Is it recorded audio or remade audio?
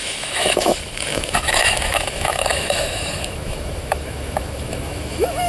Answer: remade